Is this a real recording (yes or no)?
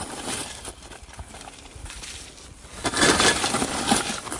yes